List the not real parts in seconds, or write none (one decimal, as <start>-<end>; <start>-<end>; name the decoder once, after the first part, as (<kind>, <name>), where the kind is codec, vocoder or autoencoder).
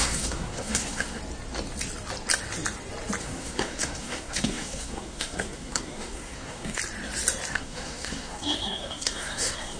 0.0-1.2 (codec, SNAC); 3.2-6.8; 7.5-9.8